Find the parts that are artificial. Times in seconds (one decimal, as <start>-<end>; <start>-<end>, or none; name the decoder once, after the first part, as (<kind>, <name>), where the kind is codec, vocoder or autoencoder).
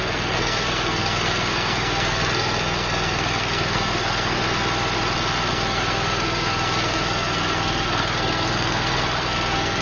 0.0-4.4 (codec, SNAC); 5.5-9.8